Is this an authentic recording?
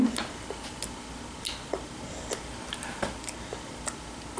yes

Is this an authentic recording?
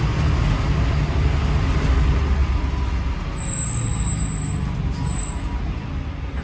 yes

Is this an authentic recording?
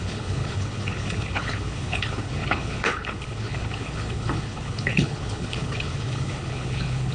no